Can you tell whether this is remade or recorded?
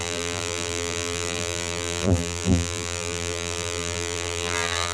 remade